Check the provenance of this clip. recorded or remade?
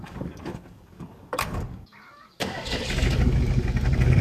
remade